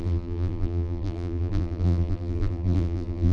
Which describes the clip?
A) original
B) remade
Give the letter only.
B